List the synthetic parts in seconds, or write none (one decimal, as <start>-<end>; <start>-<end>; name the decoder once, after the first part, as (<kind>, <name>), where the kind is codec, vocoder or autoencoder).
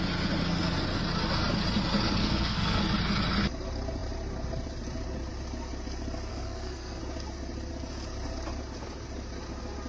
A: 2.2-2.8 (codec, SNAC); 6.3-7.0